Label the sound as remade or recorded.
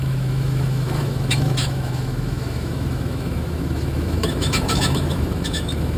remade